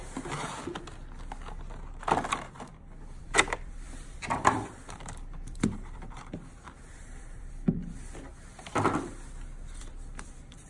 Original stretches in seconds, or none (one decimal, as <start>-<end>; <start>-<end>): 0.0-2.3; 2.7-3.2; 8.3-9.8